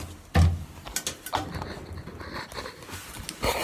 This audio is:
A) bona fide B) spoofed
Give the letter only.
A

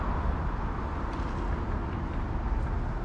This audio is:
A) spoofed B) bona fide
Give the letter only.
B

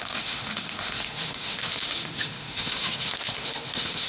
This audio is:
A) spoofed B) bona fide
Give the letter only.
A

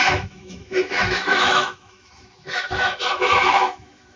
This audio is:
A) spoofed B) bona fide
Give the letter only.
A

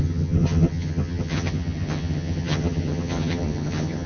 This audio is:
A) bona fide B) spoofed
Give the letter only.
B